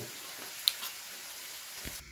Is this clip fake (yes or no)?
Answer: no